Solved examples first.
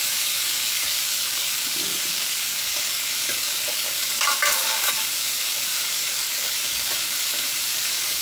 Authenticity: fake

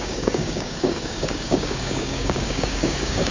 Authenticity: fake